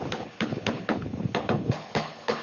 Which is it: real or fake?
fake